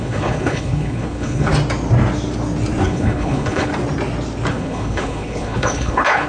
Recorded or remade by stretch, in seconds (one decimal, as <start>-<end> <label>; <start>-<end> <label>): 0.0-1.5 remade; 1.5-2.8 recorded; 2.8-3.7 remade; 3.7-4.5 recorded; 4.5-6.3 remade